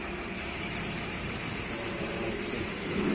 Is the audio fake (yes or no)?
yes